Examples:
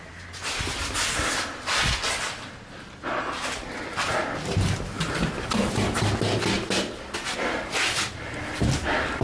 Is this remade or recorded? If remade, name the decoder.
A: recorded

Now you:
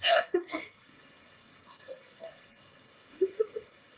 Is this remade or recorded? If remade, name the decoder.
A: remade, codec, SNAC